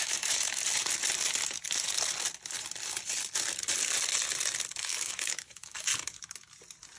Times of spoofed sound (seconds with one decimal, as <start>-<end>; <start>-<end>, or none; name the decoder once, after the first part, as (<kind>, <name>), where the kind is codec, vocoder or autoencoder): 0.0-0.6 (autoencoder, DAC-VAE); 4.8-5.9